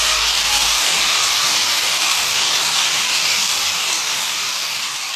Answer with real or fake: fake